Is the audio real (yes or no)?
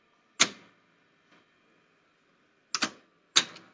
yes